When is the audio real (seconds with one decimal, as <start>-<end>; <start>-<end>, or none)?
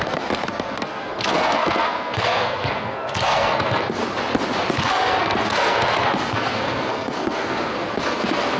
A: 4.0-4.7